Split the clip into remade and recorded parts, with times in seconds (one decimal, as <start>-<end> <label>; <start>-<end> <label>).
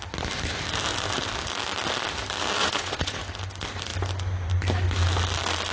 0.0-2.6 recorded; 2.6-3.2 remade; 3.2-5.7 recorded